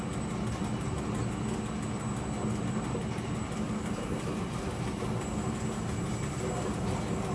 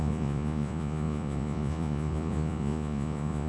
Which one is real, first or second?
first